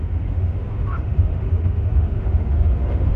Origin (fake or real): fake